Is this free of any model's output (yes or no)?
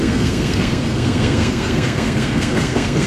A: no